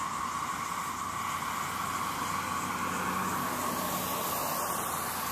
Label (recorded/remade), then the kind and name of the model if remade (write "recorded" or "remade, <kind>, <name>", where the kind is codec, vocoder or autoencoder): recorded